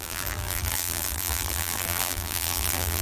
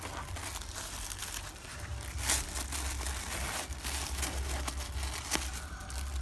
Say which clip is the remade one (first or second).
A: first